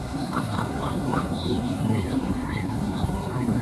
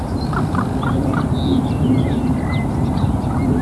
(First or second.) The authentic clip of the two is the second